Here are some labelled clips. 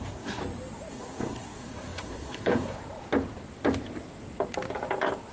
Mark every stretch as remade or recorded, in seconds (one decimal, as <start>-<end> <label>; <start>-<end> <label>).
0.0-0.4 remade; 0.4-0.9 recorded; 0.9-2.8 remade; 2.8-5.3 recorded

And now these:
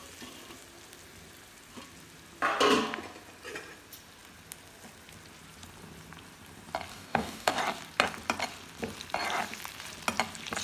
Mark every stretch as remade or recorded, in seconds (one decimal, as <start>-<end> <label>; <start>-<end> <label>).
0.0-6.9 recorded; 6.9-7.6 remade; 7.6-10.6 recorded

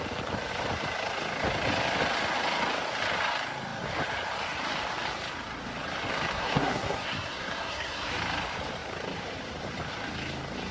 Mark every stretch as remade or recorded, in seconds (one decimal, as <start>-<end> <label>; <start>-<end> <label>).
0.0-6.3 recorded; 6.3-8.1 remade; 8.1-10.7 recorded

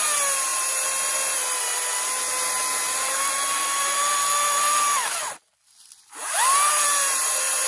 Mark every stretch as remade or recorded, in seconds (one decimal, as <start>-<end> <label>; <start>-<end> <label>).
0.0-7.7 recorded

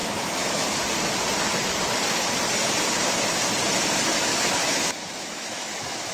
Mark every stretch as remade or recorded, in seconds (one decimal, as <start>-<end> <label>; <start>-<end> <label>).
0.0-0.8 remade; 0.8-4.3 recorded; 4.3-6.1 remade